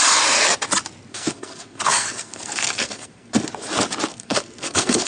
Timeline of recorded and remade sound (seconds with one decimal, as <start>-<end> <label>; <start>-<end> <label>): 0.0-1.1 recorded; 1.1-3.3 remade; 3.3-4.1 recorded; 4.1-5.1 remade